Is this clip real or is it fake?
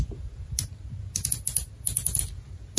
real